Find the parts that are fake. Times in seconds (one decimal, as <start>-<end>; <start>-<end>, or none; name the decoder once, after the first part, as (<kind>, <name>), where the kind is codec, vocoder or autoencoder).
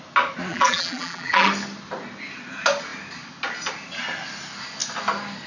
0.5-1.5 (vocoder, BigVGAN v2)